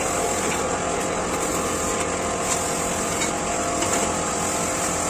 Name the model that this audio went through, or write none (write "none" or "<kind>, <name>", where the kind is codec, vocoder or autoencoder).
none